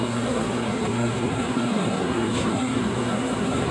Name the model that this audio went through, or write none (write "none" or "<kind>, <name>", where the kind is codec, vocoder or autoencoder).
codec, SNAC